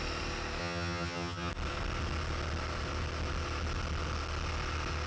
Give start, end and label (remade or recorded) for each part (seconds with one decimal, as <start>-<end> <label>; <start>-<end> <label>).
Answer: 0.0-0.6 recorded; 0.6-1.5 remade; 1.5-5.1 recorded